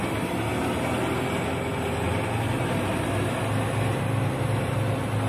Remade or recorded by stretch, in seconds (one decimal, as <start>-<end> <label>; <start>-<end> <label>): 0.0-5.3 recorded